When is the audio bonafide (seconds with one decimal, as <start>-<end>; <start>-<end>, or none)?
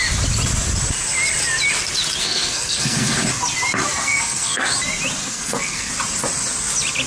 0.0-2.2; 3.2-3.9; 4.7-5.2; 5.9-7.1